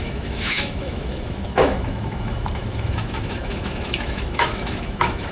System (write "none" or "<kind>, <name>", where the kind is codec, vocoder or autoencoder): autoencoder, DAC-VAE